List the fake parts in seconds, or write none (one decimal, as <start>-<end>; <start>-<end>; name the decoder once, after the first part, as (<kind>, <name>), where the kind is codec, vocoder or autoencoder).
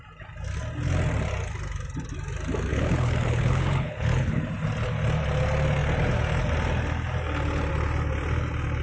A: 2.7-4.4 (codec, HILCodec)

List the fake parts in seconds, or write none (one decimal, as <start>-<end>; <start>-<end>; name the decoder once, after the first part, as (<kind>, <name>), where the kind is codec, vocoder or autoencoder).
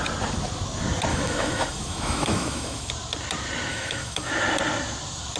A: 1.1-2.9 (autoencoder, DAC-VAE); 3.7-4.3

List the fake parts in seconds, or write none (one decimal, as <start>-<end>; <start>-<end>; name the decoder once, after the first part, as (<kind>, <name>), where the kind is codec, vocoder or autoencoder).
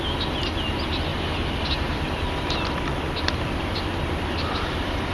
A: 0.0-1.1 (vocoder, BigVGAN v2); 1.6-5.1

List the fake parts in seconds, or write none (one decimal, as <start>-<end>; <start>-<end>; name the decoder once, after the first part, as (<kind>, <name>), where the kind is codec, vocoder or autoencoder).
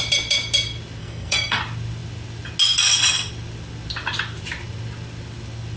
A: 1.0-1.6 (codec, SNAC)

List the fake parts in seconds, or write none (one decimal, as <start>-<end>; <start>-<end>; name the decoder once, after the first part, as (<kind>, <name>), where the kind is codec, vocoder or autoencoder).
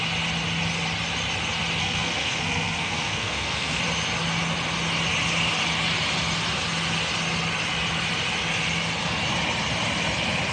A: 1.8-3.8 (codec, SNAC)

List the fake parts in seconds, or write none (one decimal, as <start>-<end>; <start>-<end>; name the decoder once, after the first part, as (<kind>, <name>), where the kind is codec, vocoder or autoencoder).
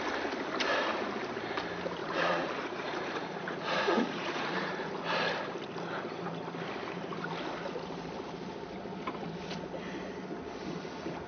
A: 2.0-4.9 (vocoder, Vocos)